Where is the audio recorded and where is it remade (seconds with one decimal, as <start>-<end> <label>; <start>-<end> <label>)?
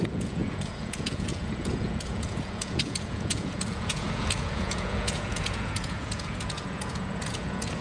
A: 0.0-7.8 remade